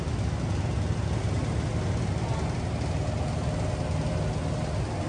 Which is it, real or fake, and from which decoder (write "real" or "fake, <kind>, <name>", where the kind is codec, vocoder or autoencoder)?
real